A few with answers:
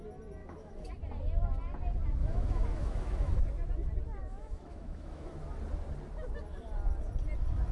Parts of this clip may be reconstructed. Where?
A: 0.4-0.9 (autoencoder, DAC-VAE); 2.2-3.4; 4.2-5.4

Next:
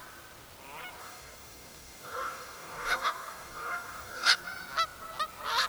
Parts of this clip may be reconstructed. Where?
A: 1.0-4.4 (codec, DAC)

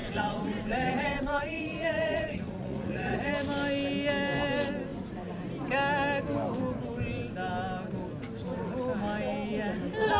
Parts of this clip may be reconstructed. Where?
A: 0.0-3.3 (vocoder, Vocos)

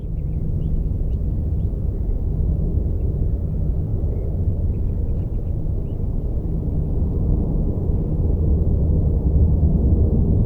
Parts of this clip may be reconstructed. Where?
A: 0.0-10.5 (vocoder, Vocos)

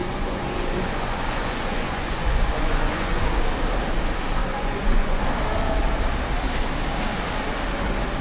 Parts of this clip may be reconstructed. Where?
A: 0.0-3.3 (vocoder, Vocos); 4.4-5.2

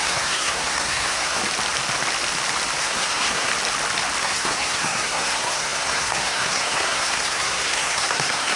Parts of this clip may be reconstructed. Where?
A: 0.0-1.4 (codec, SNAC); 2.8-3.5; 4.2-8.6